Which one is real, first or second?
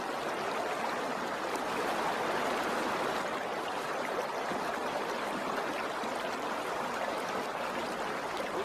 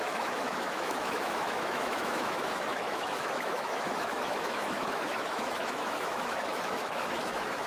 first